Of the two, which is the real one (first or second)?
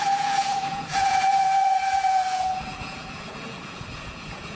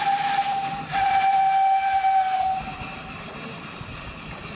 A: second